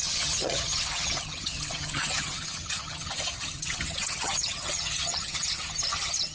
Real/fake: fake